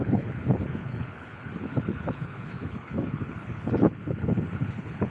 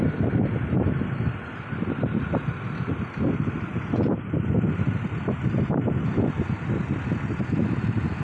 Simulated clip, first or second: first